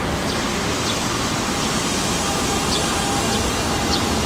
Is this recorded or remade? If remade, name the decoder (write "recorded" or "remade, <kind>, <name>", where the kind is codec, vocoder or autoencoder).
recorded